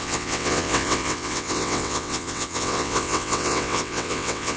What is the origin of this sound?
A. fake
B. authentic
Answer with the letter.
A